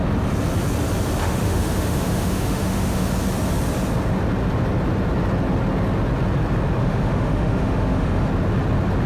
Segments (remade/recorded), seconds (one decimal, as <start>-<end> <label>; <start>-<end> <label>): 0.0-1.2 recorded; 1.2-3.1 remade; 3.1-6.8 recorded; 6.8-8.3 remade; 8.3-9.1 recorded